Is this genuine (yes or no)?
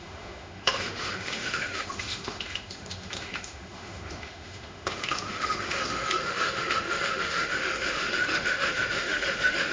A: no